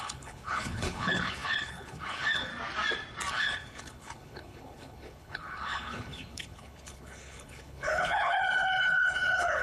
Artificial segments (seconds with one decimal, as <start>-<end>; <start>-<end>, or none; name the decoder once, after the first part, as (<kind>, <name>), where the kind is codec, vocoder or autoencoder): 0.0-2.5 (codec, HILCodec); 3.3-9.6